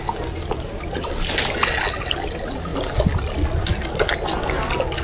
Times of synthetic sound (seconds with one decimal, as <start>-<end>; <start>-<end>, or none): none